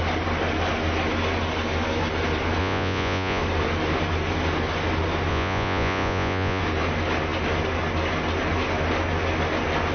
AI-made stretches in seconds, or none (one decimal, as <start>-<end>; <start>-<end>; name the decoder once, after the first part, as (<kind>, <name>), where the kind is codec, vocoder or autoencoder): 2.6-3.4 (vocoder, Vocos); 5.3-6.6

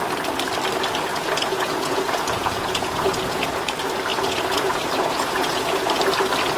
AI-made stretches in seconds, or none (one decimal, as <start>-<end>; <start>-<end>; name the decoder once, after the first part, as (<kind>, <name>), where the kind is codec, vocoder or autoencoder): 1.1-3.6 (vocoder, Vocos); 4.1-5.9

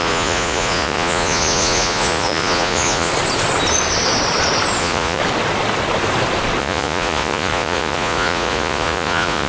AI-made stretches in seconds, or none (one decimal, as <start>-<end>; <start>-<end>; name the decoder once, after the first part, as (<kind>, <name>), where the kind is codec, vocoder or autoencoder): 0.0-3.1 (vocoder, Vocos); 4.8-5.2; 6.6-9.5

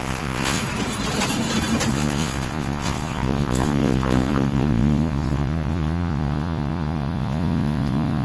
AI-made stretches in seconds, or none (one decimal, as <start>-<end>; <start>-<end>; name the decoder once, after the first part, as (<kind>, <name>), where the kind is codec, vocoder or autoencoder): 0.0-0.6 (vocoder, Vocos); 1.9-8.2

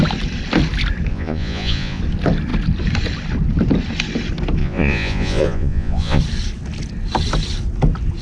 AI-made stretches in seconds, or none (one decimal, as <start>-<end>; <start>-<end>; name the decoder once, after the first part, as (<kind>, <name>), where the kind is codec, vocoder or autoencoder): 1.1-2.0 (vocoder, Vocos); 4.6-6.2

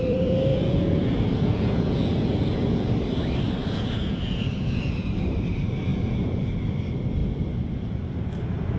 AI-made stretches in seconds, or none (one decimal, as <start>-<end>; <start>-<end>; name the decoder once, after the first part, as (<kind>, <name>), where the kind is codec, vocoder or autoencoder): 0.5-2.9 (vocoder, Vocos); 3.6-5.1; 5.9-6.5

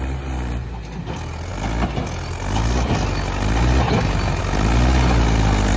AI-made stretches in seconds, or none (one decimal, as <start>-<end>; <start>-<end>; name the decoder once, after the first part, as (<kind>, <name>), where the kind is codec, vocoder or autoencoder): none